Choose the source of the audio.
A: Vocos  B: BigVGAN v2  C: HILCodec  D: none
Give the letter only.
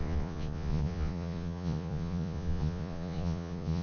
A